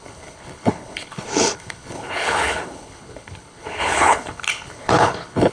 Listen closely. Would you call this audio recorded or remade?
remade